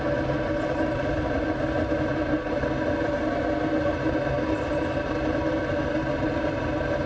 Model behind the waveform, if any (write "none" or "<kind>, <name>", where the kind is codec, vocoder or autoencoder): none